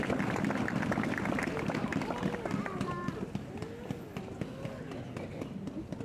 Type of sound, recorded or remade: recorded